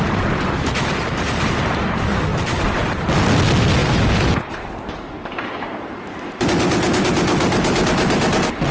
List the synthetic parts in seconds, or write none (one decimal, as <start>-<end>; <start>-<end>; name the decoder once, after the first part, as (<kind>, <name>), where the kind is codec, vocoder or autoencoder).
3.8-6.4 (vocoder, BigVGAN v2)